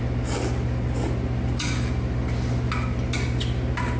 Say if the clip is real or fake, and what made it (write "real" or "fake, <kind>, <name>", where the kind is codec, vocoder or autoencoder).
real